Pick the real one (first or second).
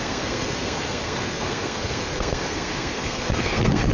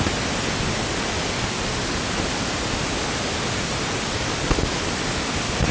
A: second